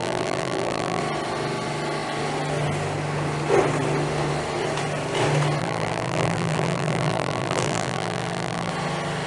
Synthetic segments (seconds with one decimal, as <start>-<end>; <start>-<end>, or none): 0.0-1.0; 5.6-8.7